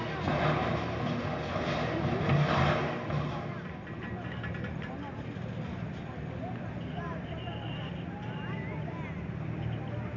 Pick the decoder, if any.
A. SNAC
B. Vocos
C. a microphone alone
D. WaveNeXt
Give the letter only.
C